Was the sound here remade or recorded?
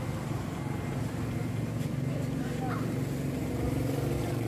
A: recorded